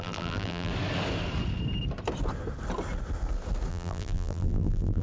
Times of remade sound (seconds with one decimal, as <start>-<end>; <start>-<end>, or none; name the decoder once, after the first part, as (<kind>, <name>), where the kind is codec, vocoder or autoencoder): 0.0-0.7 (vocoder, BigVGAN v2); 3.7-5.0